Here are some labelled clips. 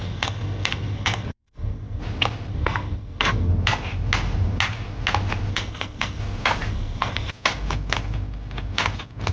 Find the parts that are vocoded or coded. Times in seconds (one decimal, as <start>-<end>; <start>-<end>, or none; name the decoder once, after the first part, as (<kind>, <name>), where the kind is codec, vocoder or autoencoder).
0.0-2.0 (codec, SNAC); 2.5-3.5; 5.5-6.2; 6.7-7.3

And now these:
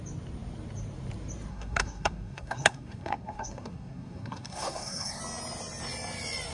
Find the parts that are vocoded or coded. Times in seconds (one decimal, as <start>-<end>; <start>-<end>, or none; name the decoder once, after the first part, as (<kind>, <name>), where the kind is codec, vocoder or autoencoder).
1.5-5.2 (codec, SNAC)

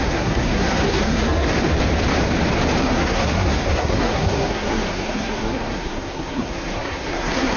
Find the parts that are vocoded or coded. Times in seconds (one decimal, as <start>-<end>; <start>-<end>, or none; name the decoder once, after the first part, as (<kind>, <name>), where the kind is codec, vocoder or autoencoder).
0.0-1.5 (codec, SNAC); 2.8-7.6